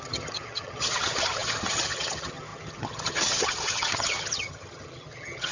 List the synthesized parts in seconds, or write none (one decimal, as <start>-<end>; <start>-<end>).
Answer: 0.0-5.5